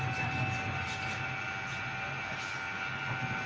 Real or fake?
real